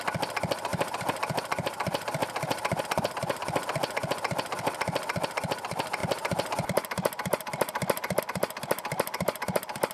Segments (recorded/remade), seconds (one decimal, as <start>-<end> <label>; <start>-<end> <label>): 0.0-0.7 recorded; 0.7-2.8 remade; 2.8-9.9 recorded